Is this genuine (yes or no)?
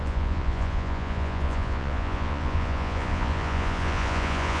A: no